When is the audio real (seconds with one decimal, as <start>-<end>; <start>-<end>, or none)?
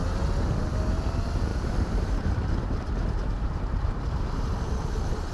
0.0-1.5; 4.7-5.3